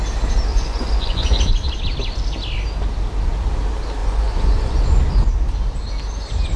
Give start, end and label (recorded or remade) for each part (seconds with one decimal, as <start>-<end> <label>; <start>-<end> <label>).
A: 0.0-0.5 recorded; 0.5-1.4 remade; 1.4-4.0 recorded; 4.0-5.1 remade; 5.1-6.6 recorded